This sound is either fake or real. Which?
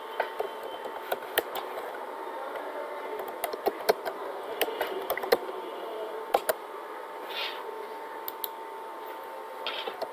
real